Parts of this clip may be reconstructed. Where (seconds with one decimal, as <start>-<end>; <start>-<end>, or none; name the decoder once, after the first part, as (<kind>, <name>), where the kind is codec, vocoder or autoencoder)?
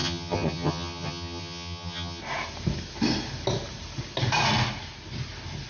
0.0-2.2 (vocoder, HiFi-GAN)